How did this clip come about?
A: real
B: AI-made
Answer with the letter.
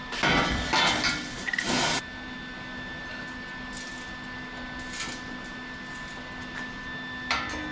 A